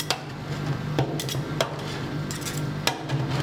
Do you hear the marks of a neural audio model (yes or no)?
no